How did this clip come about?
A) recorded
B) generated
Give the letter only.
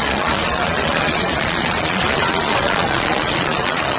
B